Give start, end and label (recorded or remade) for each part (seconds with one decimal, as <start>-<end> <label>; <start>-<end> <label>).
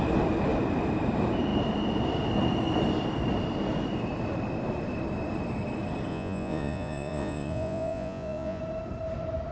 0.0-6.1 recorded; 6.1-8.6 remade; 8.6-9.5 recorded